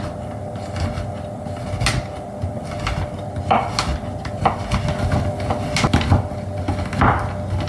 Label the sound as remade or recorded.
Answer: recorded